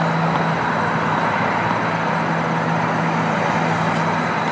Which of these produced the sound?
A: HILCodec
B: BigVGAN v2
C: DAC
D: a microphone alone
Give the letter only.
D